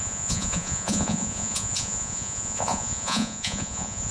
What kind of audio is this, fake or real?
fake